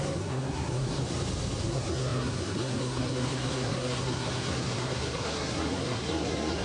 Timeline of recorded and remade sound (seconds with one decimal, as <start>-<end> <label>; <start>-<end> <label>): 0.0-1.0 remade; 1.0-1.6 recorded; 1.6-6.6 remade